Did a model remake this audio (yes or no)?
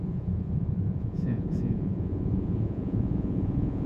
yes